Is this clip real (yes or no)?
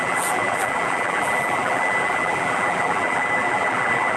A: no